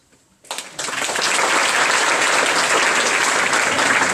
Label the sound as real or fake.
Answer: real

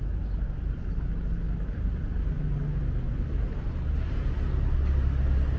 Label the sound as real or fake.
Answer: real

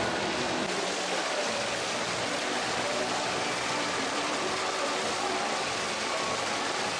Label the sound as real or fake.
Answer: real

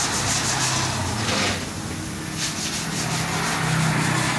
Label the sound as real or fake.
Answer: real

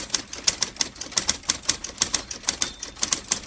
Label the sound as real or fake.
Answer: real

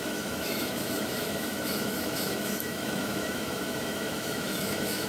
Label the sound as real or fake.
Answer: fake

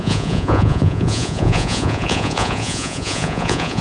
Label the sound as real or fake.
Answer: fake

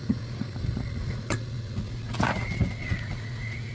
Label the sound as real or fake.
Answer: fake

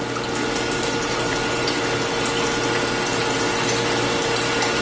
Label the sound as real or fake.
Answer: real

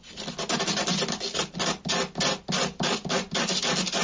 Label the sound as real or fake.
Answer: real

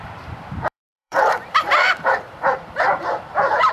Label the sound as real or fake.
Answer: fake